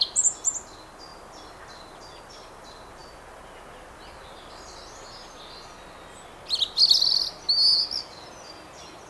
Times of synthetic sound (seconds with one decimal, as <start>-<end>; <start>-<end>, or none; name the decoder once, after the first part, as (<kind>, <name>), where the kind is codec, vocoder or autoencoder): none